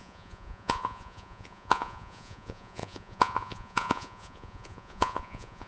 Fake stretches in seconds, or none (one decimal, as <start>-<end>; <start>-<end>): 0.0-5.7